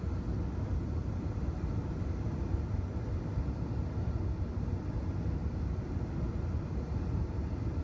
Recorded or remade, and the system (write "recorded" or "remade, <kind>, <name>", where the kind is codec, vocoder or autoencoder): recorded